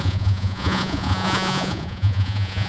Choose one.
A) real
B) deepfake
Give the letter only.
B